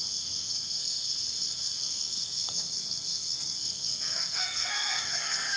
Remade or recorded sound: remade